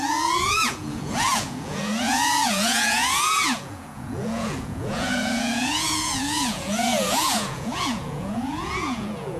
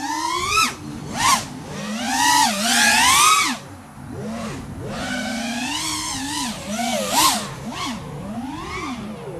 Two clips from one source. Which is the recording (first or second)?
second